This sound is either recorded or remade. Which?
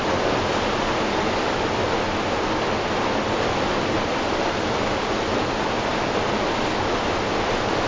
recorded